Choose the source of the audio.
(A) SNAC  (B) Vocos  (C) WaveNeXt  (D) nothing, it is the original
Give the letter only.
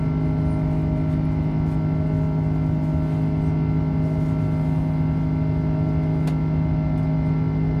D